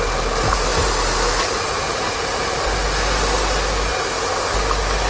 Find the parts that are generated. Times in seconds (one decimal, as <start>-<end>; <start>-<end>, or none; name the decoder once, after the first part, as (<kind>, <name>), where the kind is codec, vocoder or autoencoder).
none